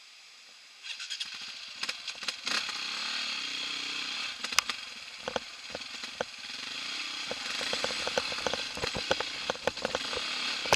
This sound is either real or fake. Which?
real